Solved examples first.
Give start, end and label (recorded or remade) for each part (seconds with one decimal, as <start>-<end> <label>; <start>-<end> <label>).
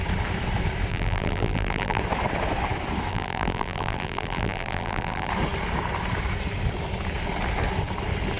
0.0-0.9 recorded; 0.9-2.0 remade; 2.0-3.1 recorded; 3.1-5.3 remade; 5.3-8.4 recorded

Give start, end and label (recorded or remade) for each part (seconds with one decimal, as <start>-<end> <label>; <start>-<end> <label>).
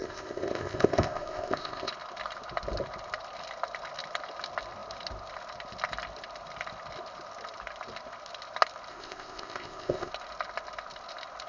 0.0-1.9 remade; 1.9-8.9 recorded; 8.9-10.1 remade; 10.1-11.5 recorded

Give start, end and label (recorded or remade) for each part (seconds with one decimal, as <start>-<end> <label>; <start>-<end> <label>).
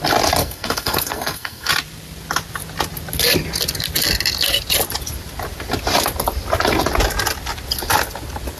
0.0-0.4 recorded; 0.4-1.7 remade; 1.7-8.6 recorded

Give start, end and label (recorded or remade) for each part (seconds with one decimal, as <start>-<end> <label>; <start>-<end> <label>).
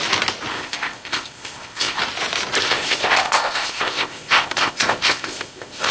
0.0-0.5 recorded; 0.5-2.0 remade; 2.0-2.6 recorded; 2.6-5.9 remade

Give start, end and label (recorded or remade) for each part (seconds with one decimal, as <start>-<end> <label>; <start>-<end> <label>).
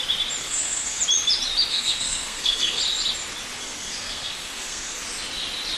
0.0-0.4 recorded; 0.4-1.0 remade; 1.0-1.7 recorded; 1.7-2.8 remade; 2.8-3.6 recorded; 3.6-5.0 remade; 5.0-5.8 recorded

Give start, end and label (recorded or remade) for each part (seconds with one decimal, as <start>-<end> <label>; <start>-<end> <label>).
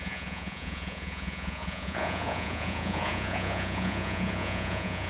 0.0-5.1 remade